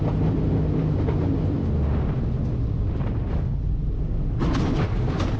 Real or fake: real